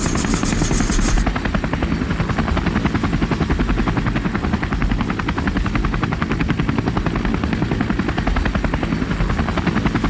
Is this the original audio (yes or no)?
yes